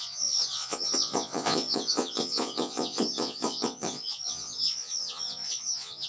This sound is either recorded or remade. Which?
remade